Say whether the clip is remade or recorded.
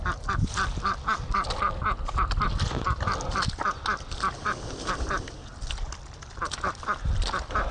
recorded